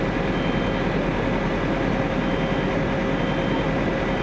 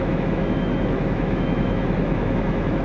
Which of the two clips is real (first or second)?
first